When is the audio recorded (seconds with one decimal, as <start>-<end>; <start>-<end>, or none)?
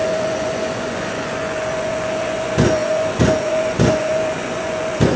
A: none